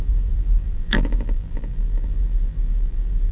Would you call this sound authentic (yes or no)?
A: no